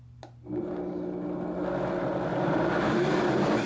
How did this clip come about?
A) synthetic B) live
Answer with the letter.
B